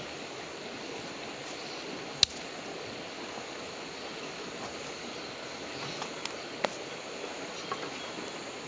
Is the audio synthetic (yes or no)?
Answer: no